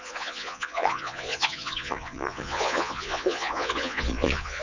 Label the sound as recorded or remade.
remade